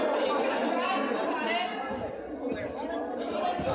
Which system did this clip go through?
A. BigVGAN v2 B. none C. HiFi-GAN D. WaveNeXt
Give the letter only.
B